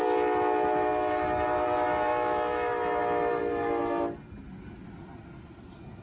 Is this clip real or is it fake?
real